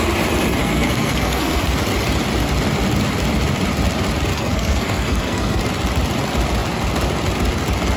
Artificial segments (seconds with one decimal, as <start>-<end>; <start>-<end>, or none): 0.6-1.6; 4.3-5.6